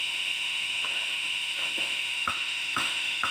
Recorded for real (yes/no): no